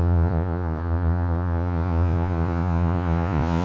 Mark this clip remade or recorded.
remade